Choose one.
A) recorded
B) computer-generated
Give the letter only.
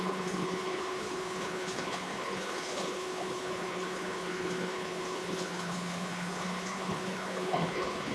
B